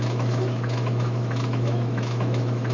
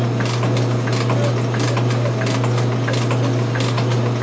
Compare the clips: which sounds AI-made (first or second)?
first